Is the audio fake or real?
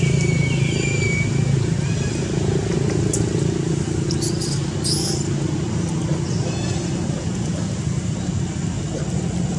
real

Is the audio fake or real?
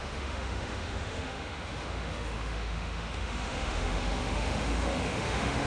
fake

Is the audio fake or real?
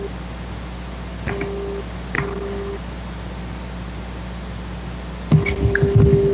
real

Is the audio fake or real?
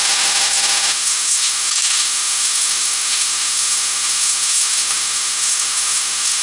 fake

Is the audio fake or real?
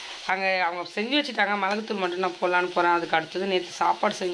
fake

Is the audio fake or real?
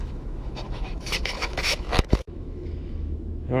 fake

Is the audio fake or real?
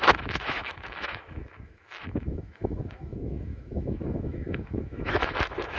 fake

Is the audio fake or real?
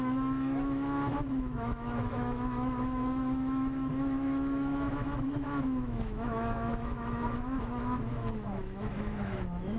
fake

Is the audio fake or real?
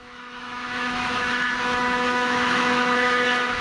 fake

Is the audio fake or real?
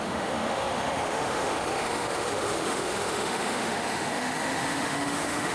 fake